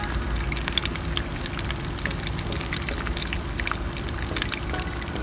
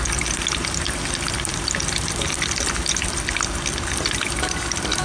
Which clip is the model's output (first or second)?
second